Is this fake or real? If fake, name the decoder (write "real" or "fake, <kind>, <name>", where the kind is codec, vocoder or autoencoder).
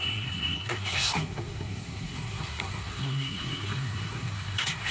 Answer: fake, codec, SNAC